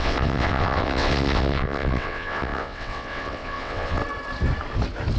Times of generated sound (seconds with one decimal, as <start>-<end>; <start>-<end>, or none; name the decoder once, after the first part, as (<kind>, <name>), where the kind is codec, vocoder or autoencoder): 0.0-4.0 (vocoder, WaveNeXt)